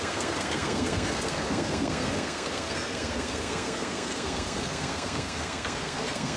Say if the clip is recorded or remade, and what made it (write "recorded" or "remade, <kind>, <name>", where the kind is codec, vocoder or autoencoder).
remade, codec, SNAC